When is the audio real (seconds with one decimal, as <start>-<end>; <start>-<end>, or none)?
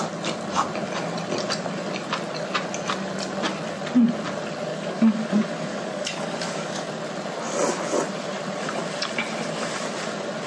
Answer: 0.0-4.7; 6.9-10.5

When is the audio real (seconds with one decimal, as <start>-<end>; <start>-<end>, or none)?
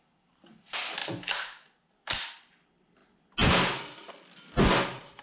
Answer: 0.0-5.2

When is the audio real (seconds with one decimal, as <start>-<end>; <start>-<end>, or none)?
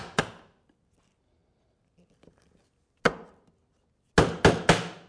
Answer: 0.0-5.1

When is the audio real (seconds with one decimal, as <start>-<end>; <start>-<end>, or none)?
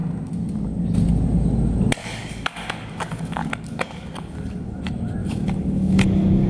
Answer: 0.0-2.0; 4.8-5.2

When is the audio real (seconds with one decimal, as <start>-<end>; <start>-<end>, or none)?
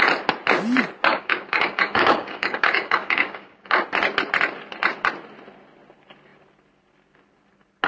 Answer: 0.0-1.1; 3.8-7.9